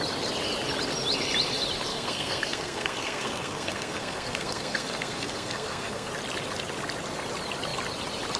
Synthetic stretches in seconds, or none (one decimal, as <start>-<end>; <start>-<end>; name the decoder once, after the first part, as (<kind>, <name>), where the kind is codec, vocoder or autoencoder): 1.9-6.1 (codec, SNAC)